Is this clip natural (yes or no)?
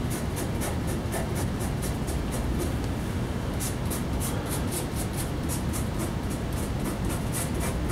yes